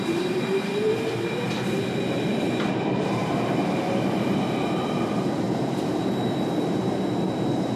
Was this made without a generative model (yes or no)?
no